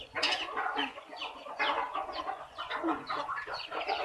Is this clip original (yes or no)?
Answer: no